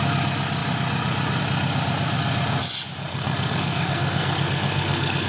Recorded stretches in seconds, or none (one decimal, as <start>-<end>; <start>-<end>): 0.0-3.1